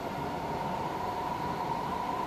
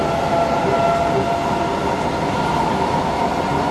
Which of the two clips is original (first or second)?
second